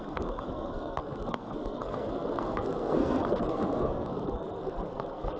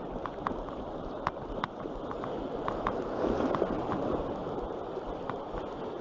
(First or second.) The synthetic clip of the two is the first